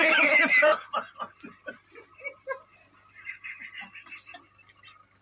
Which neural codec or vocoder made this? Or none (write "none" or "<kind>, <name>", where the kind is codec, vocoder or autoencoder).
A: none